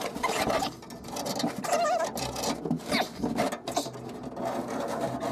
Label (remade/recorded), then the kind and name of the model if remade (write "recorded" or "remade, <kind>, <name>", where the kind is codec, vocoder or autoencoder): recorded